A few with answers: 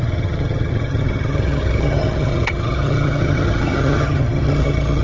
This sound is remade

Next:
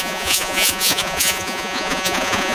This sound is remade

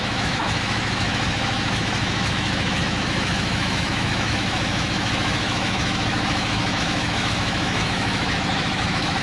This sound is remade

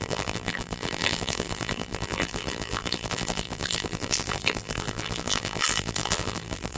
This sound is remade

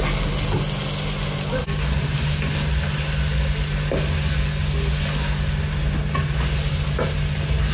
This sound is recorded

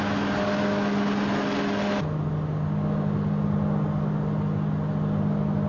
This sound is recorded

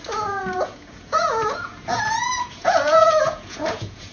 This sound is remade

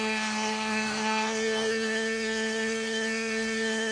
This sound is remade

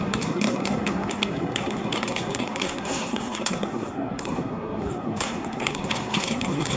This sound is remade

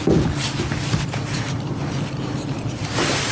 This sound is recorded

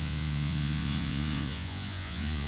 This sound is remade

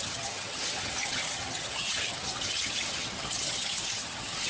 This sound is remade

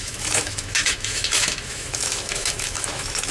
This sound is remade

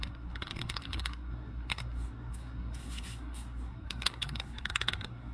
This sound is remade